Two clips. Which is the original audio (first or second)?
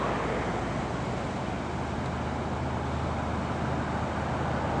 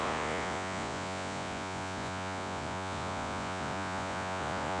first